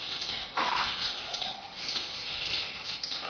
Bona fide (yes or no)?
no